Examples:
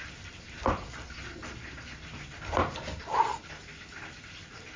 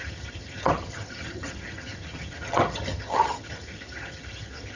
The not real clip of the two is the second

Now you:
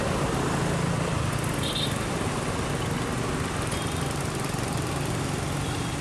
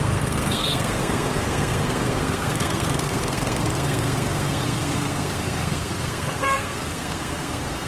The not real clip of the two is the second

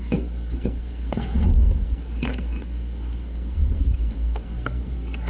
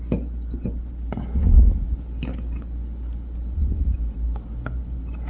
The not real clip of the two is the first